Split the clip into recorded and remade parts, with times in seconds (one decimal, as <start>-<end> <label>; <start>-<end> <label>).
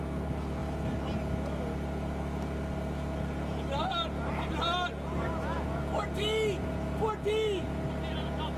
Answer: 0.0-8.6 recorded